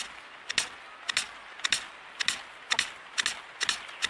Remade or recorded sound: recorded